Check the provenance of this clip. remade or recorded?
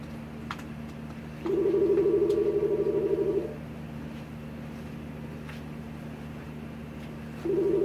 recorded